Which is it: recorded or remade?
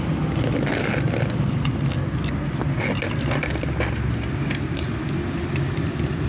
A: recorded